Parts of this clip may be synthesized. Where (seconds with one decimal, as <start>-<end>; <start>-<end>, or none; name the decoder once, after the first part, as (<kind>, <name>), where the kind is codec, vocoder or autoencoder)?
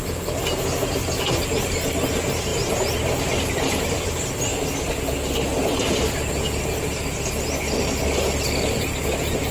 none